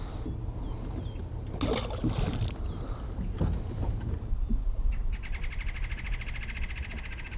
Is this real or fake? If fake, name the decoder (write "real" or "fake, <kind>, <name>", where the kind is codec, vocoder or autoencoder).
real